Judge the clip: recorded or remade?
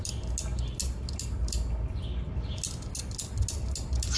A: recorded